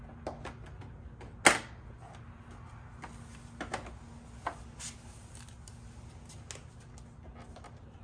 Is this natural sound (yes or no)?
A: yes